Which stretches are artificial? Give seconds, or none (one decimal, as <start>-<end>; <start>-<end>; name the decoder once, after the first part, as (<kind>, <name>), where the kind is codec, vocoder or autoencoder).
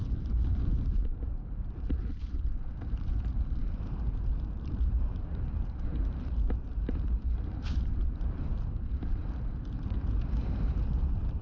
0.0-9.2 (vocoder, BigVGAN v2); 10.4-11.4